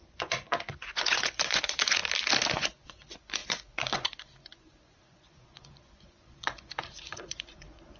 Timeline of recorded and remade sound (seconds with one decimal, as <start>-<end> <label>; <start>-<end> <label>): 0.0-2.0 remade; 2.0-2.5 recorded; 2.5-8.0 remade